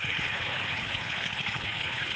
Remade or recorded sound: remade